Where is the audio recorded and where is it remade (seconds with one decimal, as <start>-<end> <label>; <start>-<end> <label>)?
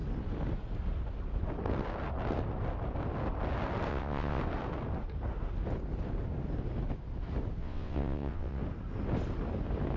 0.0-3.9 recorded; 3.9-4.4 remade; 4.4-7.6 recorded; 7.6-8.6 remade; 8.6-10.0 recorded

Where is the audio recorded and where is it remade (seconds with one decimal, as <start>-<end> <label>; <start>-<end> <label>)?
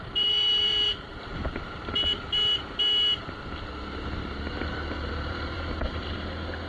0.0-1.3 remade; 1.3-5.0 recorded; 5.0-6.7 remade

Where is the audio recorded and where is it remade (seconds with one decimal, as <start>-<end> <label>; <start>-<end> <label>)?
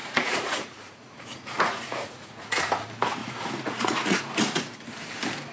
0.0-2.7 remade; 2.7-3.2 recorded; 3.2-4.2 remade; 4.2-5.5 recorded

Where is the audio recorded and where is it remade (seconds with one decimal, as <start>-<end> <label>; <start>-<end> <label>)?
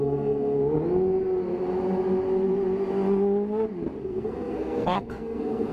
0.0-0.6 remade; 0.6-4.0 recorded; 4.0-5.7 remade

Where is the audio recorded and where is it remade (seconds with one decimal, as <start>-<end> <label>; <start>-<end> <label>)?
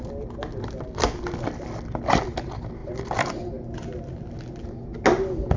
0.0-5.6 recorded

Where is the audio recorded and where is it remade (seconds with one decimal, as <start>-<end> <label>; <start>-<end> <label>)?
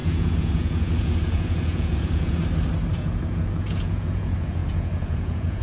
0.0-2.4 remade; 2.4-2.9 recorded; 2.9-5.6 remade